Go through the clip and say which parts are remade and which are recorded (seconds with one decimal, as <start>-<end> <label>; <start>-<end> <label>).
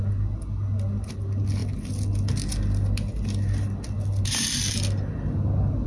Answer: 0.0-5.9 recorded